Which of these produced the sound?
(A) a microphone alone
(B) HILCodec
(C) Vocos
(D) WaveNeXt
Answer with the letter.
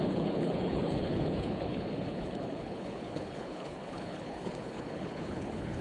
B